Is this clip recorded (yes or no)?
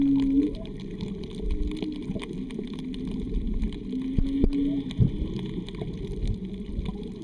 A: yes